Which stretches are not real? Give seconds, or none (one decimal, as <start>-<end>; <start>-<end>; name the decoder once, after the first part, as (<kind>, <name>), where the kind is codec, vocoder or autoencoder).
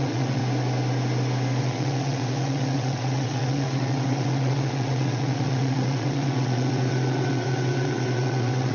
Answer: 0.0-0.4 (vocoder, WaveNeXt); 1.6-8.7